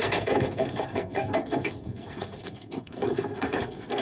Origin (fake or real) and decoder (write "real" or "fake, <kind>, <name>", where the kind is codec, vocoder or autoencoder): fake, codec, SNAC